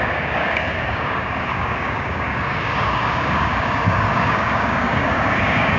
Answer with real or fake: fake